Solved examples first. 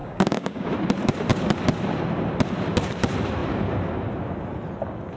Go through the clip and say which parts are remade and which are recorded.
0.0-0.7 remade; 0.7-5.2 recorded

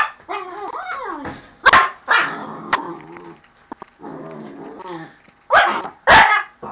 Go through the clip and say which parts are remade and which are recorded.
0.0-2.4 recorded; 2.4-2.9 remade; 2.9-6.7 recorded

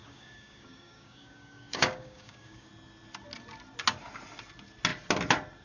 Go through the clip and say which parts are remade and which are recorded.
0.0-2.7 remade; 2.7-5.6 recorded

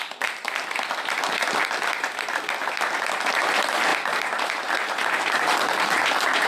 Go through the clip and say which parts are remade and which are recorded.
0.0-6.5 recorded

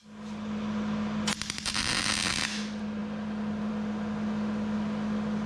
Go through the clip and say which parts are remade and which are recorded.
0.0-5.5 recorded